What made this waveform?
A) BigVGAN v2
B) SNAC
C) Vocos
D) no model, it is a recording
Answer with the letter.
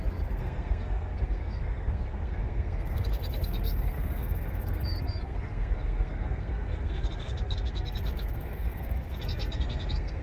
B